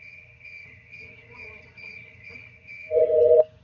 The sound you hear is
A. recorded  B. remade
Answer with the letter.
B